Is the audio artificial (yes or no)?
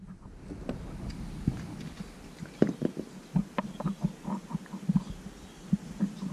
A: no